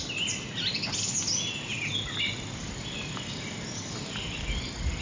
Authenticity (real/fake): real